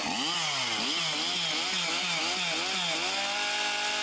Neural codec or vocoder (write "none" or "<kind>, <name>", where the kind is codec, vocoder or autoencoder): none